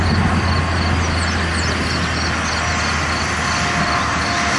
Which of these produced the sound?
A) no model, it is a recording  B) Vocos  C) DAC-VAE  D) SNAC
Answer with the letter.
A